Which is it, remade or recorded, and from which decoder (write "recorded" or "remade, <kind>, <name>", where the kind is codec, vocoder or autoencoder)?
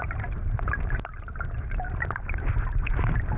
recorded